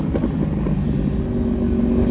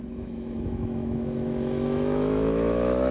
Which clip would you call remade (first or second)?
second